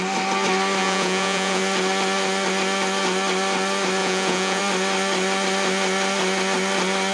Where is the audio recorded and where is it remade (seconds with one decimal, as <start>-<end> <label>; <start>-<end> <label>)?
0.0-0.8 recorded; 0.8-1.6 remade; 1.6-4.0 recorded; 4.0-4.6 remade; 4.6-7.1 recorded